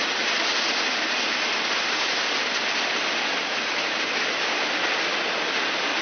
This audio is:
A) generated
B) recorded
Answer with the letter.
A